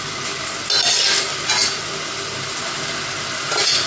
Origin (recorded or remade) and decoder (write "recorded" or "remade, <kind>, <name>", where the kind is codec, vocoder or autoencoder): recorded